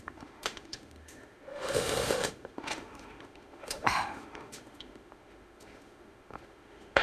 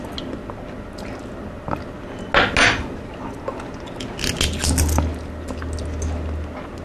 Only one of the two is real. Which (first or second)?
second